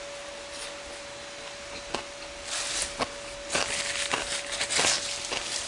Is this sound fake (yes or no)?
no